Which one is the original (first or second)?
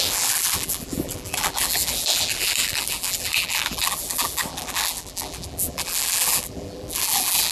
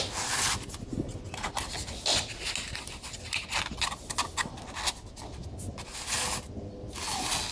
second